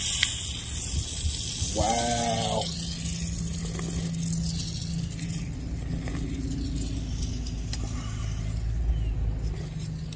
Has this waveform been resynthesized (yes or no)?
no